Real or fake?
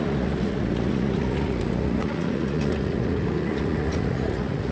fake